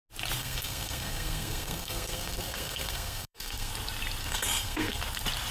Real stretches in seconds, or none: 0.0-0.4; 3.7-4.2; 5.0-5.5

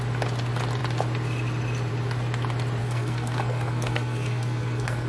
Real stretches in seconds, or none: 0.0-2.8

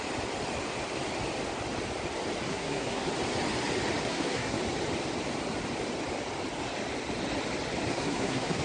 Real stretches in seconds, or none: 0.0-2.5; 3.1-4.0; 4.6-7.9

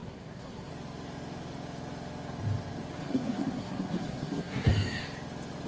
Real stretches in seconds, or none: 0.7-3.0; 4.7-5.7

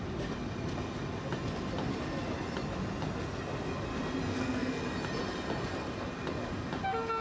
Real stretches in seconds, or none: 0.0-4.3; 4.8-7.2